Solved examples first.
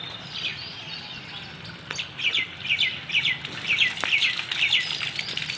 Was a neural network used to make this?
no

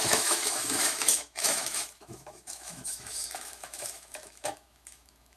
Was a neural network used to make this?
yes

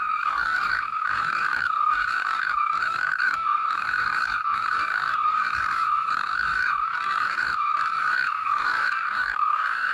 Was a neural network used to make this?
yes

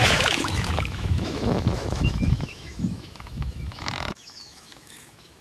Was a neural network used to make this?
yes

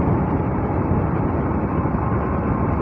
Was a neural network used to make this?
no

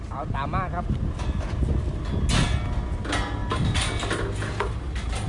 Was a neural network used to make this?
no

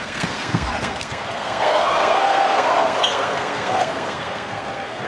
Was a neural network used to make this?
yes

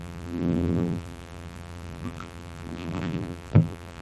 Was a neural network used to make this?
yes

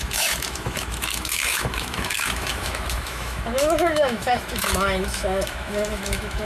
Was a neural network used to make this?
yes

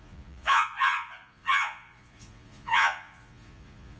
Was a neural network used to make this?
yes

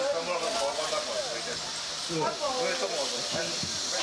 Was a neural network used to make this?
no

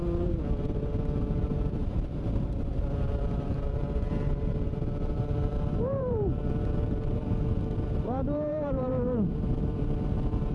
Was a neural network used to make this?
yes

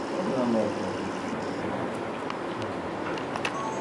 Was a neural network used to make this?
no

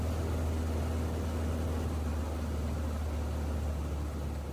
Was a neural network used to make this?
no